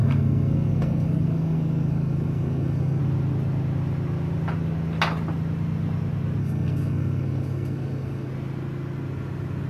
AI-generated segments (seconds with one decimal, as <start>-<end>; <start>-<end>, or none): 0.0-3.0; 6.4-8.3